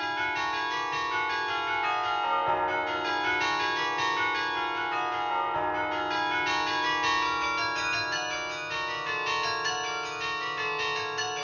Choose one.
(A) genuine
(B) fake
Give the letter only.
A